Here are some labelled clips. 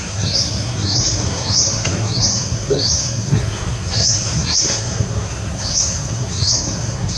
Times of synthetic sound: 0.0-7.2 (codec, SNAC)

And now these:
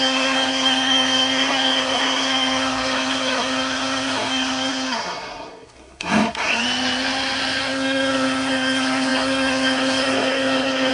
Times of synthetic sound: 0.0-6.6 (codec, SNAC); 7.6-10.9

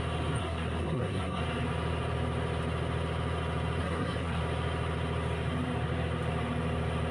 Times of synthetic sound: 0.4-1.4 (codec, SNAC); 3.8-4.4